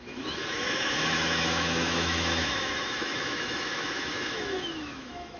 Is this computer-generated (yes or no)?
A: yes